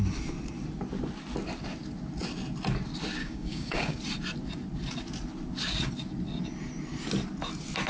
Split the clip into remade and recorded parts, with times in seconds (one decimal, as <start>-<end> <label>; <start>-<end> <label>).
0.0-3.2 recorded; 3.2-4.0 remade; 4.0-7.9 recorded